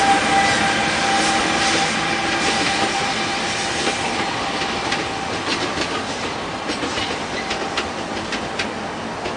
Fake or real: real